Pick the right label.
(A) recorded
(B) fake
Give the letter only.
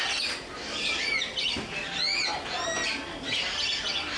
A